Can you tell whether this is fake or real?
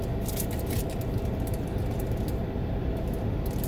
real